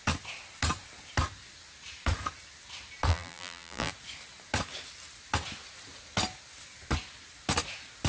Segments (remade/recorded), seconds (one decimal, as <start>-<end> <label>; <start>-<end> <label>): 0.0-3.1 recorded; 3.1-3.9 remade; 3.9-8.1 recorded